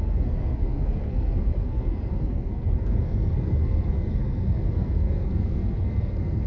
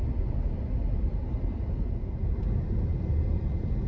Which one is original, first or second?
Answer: second